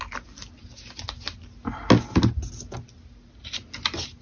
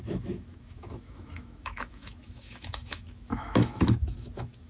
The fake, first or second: second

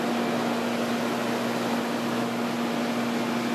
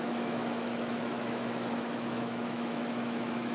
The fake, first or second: second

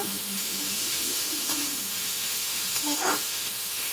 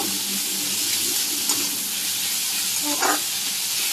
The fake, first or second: first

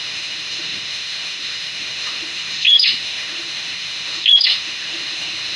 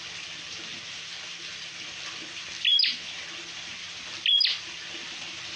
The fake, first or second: first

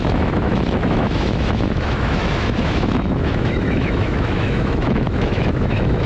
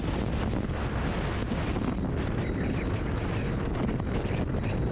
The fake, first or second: first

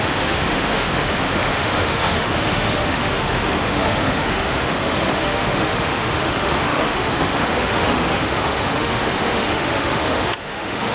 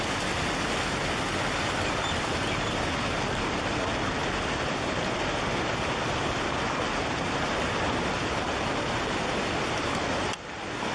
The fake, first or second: first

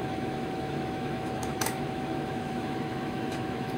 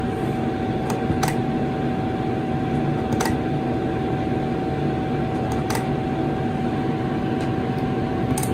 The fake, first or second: first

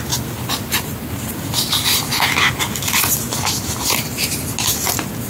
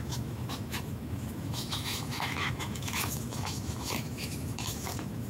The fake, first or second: second